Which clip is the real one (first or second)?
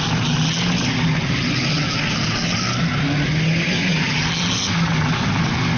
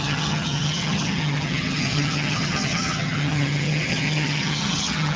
first